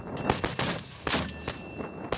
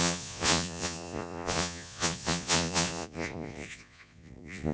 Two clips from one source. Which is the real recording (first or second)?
first